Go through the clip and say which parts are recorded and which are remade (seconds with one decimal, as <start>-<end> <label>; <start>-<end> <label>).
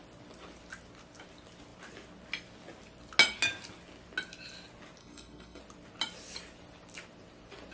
0.0-5.0 recorded; 5.0-5.6 remade; 5.6-7.7 recorded